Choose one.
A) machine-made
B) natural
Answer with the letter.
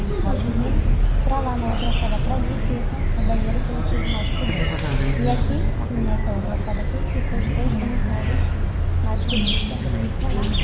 B